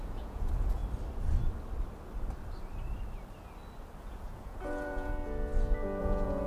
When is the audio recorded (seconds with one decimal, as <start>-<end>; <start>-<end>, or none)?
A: 0.8-4.0; 5.1-6.0